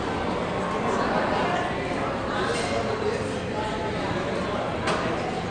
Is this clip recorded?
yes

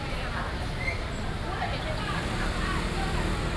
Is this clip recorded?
yes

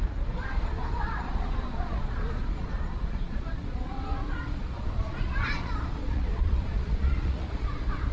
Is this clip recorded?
no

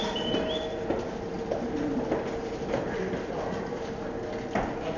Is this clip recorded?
yes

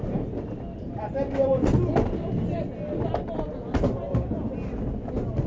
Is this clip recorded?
yes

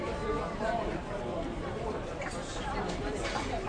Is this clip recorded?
no